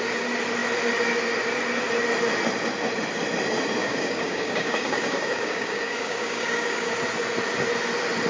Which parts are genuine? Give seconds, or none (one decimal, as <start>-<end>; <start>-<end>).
0.0-3.8; 6.9-8.3